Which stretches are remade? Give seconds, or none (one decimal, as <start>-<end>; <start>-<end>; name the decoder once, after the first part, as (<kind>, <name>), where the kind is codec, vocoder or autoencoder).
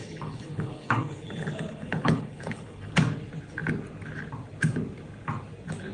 0.0-2.9 (codec, HILCodec)